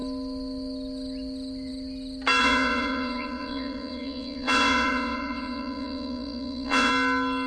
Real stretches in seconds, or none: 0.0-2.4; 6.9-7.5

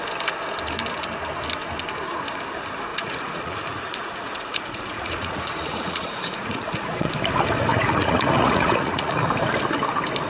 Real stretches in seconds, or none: 0.0-2.9; 7.1-7.7; 9.3-10.3